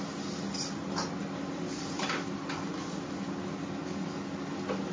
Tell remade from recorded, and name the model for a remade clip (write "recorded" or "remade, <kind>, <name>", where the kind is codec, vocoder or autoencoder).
recorded